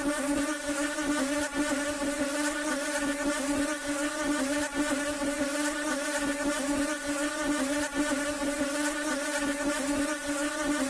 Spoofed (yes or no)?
no